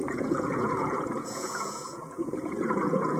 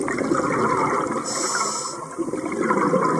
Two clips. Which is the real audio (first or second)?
second